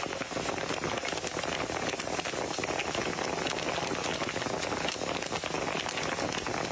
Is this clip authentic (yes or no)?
yes